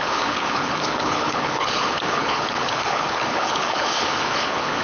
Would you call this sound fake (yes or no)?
yes